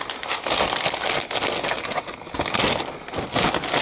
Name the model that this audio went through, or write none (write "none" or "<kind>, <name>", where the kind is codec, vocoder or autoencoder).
none